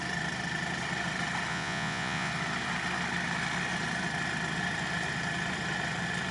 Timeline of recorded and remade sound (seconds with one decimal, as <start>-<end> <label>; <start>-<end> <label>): 0.0-1.5 recorded; 1.5-2.3 remade; 2.3-6.3 recorded